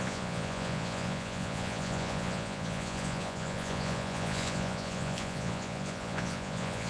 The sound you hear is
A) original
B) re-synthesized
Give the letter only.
B